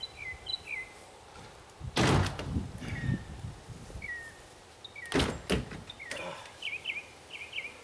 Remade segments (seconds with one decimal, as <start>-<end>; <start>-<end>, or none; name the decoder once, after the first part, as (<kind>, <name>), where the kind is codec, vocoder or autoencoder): none